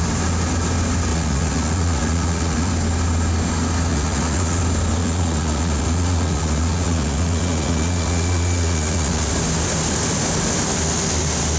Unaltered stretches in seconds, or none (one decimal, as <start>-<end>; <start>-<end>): 0.0-1.1; 2.7-3.9; 4.6-5.0; 9.3-11.6